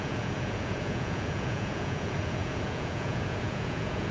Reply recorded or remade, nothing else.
remade